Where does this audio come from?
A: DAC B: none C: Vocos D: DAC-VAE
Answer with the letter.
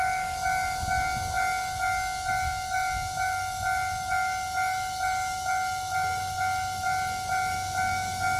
D